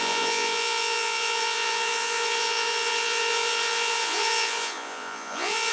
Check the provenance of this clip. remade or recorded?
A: remade